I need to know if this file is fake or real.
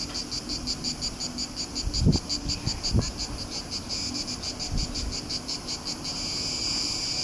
real